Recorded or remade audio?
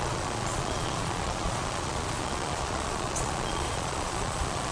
remade